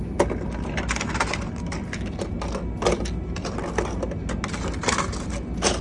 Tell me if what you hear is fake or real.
real